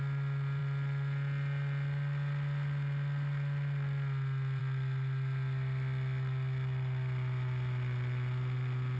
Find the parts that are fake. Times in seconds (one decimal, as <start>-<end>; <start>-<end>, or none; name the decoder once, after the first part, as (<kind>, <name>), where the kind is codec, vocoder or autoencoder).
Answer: none